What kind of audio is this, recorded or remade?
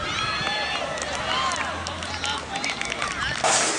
recorded